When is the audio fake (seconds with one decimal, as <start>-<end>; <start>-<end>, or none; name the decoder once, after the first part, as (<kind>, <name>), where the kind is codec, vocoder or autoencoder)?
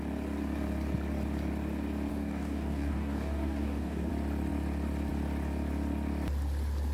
2.1-4.1 (codec, DAC)